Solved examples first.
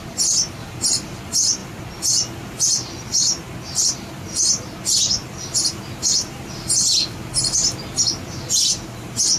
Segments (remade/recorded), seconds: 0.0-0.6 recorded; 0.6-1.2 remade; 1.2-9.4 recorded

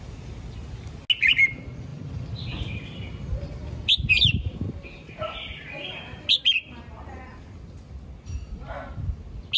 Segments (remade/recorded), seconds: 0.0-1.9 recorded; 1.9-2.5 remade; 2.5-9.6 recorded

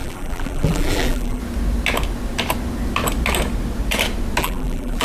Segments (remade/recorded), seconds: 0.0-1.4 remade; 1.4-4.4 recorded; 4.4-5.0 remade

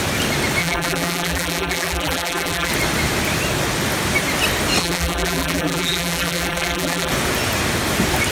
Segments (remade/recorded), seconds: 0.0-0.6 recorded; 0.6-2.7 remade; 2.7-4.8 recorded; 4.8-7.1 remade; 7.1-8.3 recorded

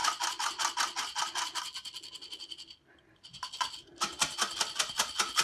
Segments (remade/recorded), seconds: 0.0-5.4 recorded

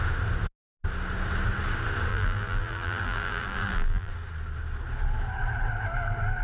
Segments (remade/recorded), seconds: 0.0-2.1 recorded; 2.1-4.1 remade; 4.1-6.4 recorded